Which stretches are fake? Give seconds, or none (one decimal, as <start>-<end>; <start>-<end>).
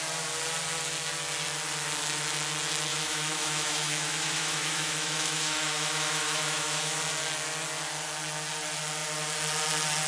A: 2.9-7.0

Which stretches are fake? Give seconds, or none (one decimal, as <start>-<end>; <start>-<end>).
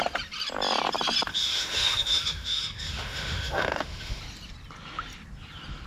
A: 1.3-4.2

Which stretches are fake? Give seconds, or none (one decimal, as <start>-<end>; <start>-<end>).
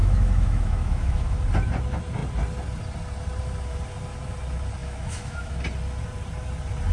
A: 0.0-1.4; 4.8-5.6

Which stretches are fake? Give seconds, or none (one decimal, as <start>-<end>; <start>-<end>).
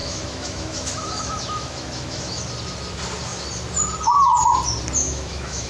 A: 0.0-2.4; 5.0-5.7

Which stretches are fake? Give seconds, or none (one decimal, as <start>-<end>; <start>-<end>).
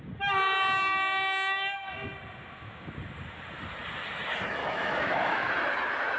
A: 4.6-5.5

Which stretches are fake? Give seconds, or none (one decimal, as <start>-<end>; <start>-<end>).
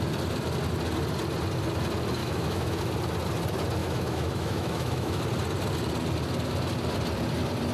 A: 2.2-2.8; 3.8-5.2